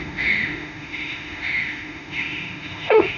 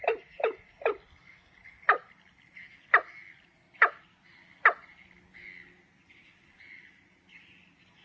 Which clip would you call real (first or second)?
second